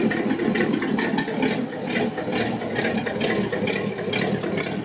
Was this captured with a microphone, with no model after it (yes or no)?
yes